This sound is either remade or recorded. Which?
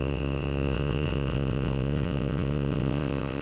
remade